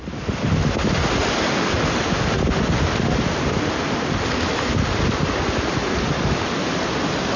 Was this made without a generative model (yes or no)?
yes